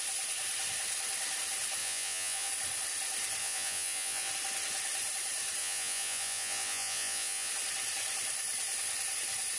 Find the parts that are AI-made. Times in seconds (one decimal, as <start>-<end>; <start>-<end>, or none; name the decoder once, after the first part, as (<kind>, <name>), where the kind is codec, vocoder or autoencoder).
1.8-2.5 (vocoder, Vocos); 3.4-4.3; 5.6-7.5